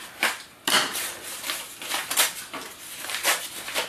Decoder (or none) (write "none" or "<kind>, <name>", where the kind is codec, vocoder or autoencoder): none